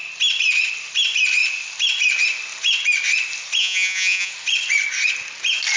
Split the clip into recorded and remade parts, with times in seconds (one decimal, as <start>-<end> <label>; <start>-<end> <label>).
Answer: 0.0-3.6 recorded; 3.6-4.3 remade; 4.3-5.8 recorded